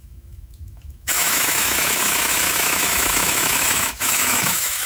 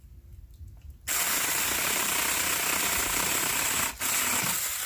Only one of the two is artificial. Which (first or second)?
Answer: first